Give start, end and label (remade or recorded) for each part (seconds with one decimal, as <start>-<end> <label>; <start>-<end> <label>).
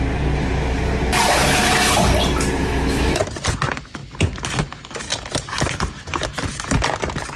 0.0-2.6 recorded; 2.6-3.2 remade; 3.2-7.4 recorded